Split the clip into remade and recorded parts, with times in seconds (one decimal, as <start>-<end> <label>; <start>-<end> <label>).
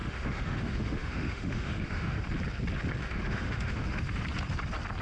0.0-2.2 remade; 2.2-3.0 recorded; 3.0-4.2 remade; 4.2-5.0 recorded